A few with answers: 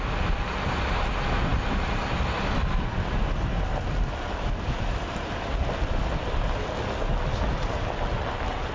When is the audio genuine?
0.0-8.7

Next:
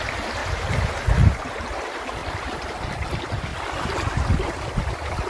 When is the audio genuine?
2.2-3.1; 3.5-4.8

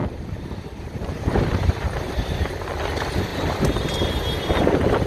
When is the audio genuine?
2.4-3.3; 4.1-5.1

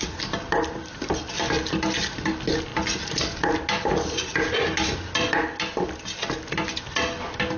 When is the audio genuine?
0.0-7.6

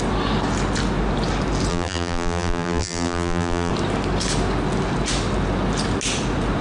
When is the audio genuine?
0.0-1.7; 3.7-6.6